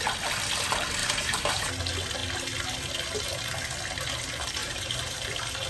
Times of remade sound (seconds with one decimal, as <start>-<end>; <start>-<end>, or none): 1.0-1.7; 4.6-5.3